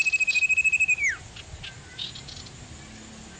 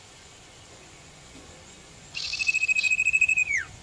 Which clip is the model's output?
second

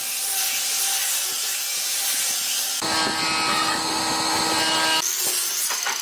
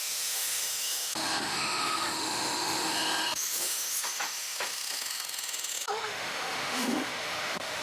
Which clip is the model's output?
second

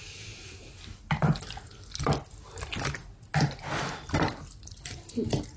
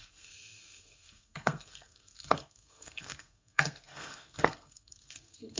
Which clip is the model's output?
second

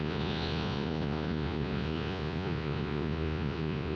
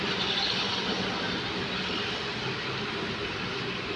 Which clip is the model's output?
first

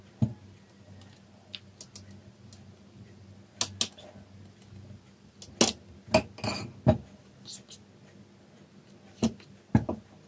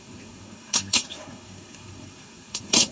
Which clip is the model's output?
second